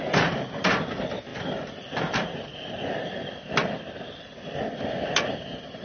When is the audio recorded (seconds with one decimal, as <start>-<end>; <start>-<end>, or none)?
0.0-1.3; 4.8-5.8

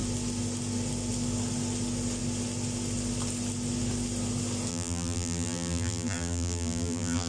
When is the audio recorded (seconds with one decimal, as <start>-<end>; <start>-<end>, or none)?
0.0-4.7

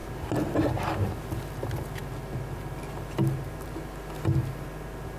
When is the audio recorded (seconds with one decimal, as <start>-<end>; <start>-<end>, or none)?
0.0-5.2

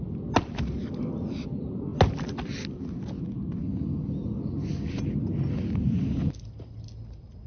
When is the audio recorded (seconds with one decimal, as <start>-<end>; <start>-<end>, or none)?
0.0-7.5